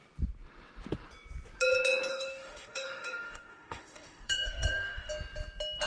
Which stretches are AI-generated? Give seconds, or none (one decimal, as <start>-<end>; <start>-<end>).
2.1-5.1